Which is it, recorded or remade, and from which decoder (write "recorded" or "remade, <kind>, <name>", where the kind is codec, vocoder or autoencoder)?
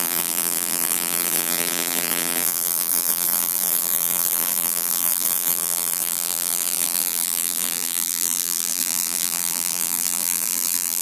remade, vocoder, BigVGAN v2